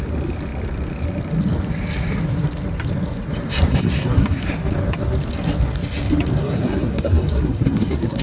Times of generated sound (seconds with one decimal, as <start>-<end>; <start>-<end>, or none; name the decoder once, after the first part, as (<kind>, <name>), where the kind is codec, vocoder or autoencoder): 3.7-4.5 (codec, SNAC); 6.4-8.2